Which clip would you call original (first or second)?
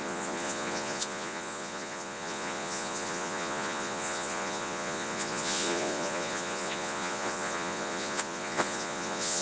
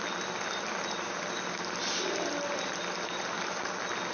second